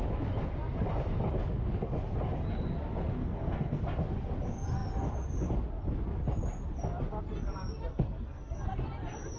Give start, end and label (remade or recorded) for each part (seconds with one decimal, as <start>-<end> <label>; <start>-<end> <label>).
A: 0.0-3.2 recorded; 3.2-3.8 remade; 3.8-7.9 recorded; 7.9-8.8 remade; 8.8-9.4 recorded

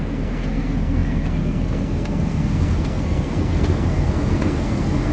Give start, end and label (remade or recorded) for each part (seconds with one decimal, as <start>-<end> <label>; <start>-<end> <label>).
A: 0.0-5.1 remade

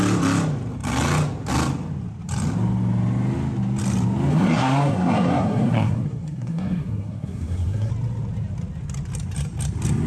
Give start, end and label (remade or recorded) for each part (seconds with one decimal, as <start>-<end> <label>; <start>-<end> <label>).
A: 0.0-4.3 recorded; 4.3-7.9 remade; 7.9-10.1 recorded

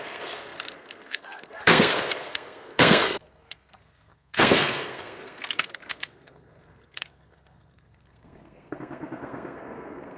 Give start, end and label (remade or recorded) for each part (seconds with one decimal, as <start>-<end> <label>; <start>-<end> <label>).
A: 0.0-10.2 remade

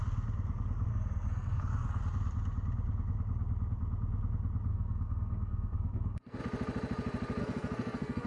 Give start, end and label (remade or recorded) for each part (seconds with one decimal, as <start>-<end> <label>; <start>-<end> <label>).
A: 0.0-0.9 recorded; 0.9-1.6 remade; 1.6-4.7 recorded; 4.7-6.4 remade; 6.4-7.4 recorded; 7.4-8.3 remade

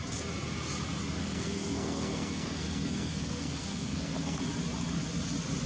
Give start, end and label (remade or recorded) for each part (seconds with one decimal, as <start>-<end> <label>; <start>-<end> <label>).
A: 0.0-1.2 recorded; 1.2-4.4 remade; 4.4-5.7 recorded